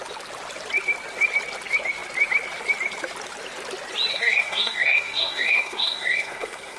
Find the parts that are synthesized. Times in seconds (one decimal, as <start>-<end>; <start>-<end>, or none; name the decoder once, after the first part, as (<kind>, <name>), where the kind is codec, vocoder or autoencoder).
4.1-6.8 (codec, SNAC)